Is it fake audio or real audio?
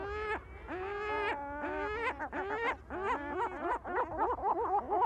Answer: real